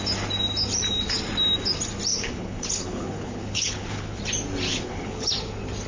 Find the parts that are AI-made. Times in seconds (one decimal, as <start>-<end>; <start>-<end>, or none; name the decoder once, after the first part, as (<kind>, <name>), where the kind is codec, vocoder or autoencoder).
2.1-4.2 (codec, HILCodec); 4.7-5.3